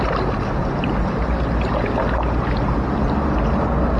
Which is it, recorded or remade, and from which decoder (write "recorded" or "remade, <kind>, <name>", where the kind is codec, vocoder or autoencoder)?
recorded